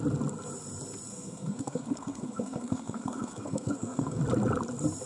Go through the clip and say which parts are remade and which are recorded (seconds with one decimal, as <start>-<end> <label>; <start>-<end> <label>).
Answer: 0.0-1.1 recorded; 1.1-4.2 remade; 4.2-5.1 recorded

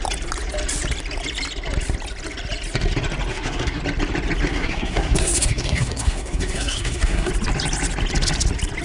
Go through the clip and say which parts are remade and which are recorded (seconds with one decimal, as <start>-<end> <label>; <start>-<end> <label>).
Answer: 0.0-3.3 recorded; 3.3-3.8 remade; 3.8-4.5 recorded; 4.5-7.3 remade; 7.3-8.8 recorded

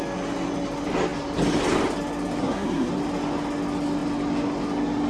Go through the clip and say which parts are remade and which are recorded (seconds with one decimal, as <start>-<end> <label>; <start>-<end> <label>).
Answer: 0.0-2.4 recorded; 2.4-2.9 remade; 2.9-5.1 recorded

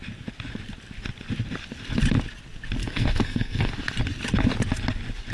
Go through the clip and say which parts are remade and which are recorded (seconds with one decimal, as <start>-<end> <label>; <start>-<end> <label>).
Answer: 0.0-2.8 recorded; 2.8-3.7 remade; 3.7-5.3 recorded